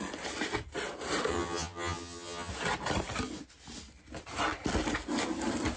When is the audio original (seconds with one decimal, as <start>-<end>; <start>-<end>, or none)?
0.0-1.3; 2.5-5.8